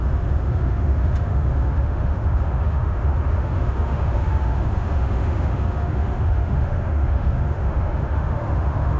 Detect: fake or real fake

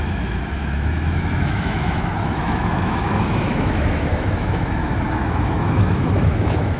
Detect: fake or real fake